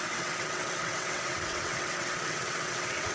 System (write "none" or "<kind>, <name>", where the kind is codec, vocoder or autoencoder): vocoder, WaveNeXt